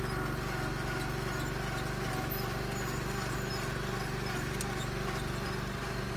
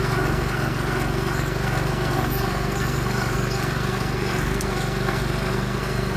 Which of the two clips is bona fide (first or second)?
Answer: first